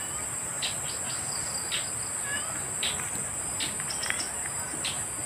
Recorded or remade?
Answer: recorded